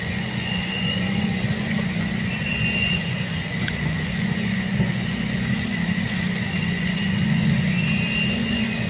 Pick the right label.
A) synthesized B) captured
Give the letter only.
A